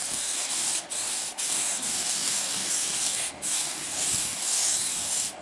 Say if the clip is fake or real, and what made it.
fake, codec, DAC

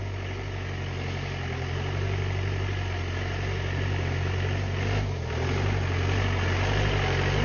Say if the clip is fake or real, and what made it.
real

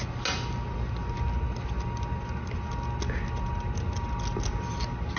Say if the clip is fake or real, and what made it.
real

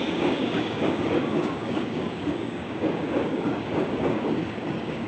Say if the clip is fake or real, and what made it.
fake, codec, DAC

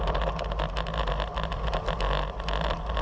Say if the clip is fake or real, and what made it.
real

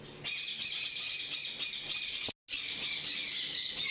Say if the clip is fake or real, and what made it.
real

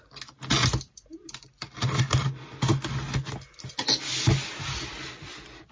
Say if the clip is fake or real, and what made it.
real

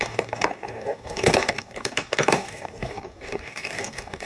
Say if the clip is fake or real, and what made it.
fake, codec, DAC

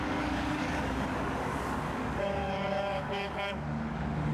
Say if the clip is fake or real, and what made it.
fake, codec, DAC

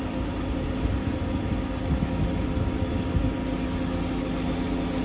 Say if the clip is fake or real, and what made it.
real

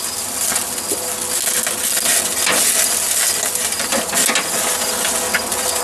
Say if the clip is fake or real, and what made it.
real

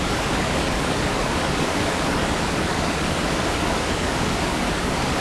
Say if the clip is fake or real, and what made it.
fake, codec, DAC